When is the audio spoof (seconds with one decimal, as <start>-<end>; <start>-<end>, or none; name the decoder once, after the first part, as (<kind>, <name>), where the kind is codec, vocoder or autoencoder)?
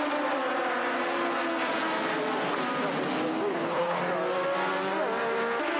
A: 3.5-4.0 (codec, HILCodec)